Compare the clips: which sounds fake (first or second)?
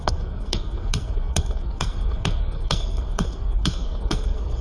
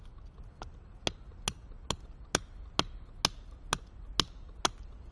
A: first